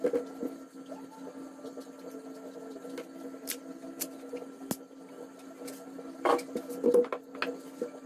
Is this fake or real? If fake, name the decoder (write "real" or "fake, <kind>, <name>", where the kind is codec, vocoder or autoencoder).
real